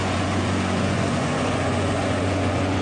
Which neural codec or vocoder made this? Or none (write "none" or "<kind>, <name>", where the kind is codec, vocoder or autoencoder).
vocoder, Vocos